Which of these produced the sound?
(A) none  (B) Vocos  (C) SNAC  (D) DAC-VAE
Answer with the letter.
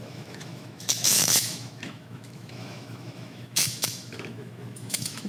D